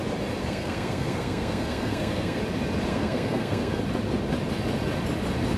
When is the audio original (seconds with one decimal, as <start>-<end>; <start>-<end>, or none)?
0.0-0.4; 2.4-2.9; 3.8-5.6